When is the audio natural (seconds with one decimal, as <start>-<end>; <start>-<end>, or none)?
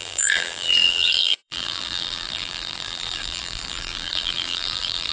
none